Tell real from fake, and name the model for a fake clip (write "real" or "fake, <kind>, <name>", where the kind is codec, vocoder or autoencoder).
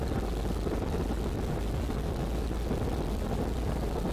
real